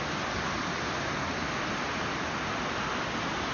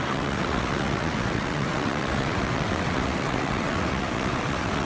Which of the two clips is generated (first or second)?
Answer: second